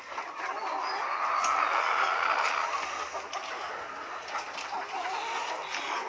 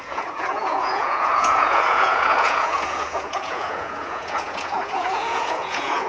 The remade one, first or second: second